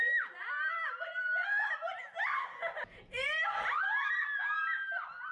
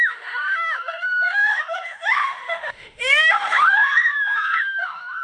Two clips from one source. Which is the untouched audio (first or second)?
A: first